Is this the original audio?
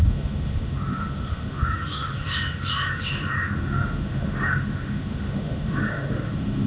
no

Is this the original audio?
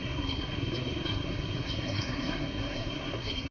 no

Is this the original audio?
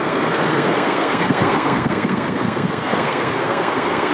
no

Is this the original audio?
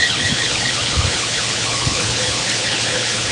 no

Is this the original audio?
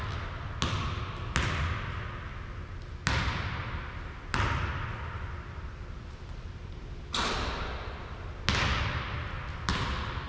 yes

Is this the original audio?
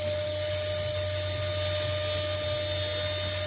yes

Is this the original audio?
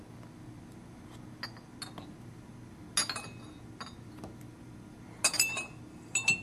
yes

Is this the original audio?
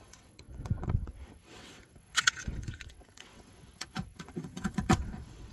no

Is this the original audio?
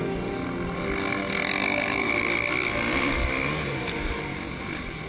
yes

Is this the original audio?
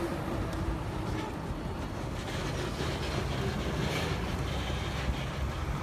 yes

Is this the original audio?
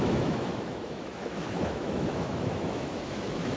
no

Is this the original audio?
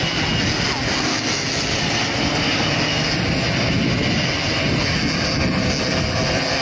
yes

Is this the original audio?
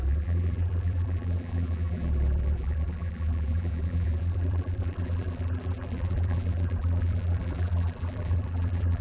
no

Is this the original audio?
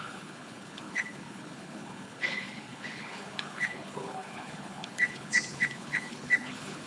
no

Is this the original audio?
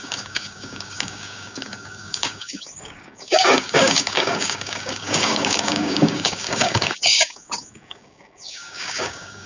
no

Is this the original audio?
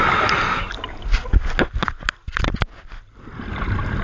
yes